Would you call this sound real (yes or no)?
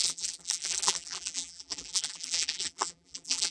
no